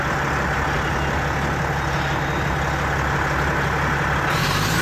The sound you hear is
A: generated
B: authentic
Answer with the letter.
B